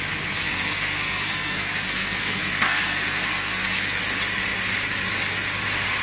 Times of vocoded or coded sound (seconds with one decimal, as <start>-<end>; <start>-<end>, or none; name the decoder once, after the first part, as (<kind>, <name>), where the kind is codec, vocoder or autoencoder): 0.4-4.0 (codec, SNAC)